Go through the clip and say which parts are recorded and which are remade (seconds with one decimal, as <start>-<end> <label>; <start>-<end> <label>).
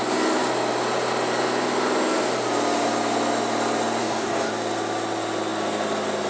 0.0-4.0 recorded; 4.0-4.5 remade; 4.5-6.3 recorded